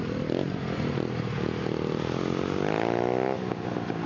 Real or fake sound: real